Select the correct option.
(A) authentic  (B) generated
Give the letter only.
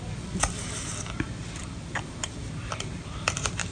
B